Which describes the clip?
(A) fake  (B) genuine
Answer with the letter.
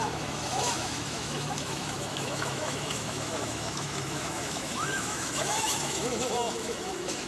A